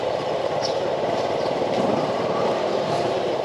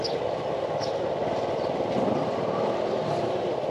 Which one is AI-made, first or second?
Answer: first